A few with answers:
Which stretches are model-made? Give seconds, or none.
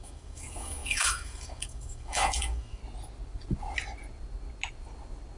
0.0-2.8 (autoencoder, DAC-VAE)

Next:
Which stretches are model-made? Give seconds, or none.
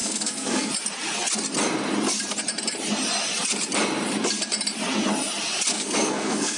0.0-0.7 (codec, SNAC); 5.7-6.6